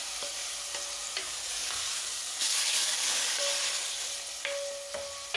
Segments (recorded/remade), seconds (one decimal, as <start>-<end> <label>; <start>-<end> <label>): 0.0-1.2 recorded; 1.2-3.4 remade; 3.4-5.4 recorded